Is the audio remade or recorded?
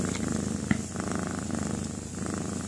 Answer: recorded